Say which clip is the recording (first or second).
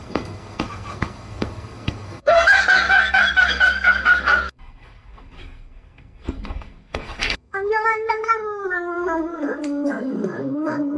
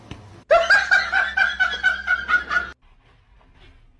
second